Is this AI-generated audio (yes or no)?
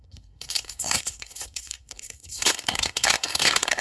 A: yes